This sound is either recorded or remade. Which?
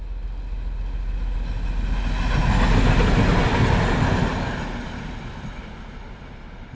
recorded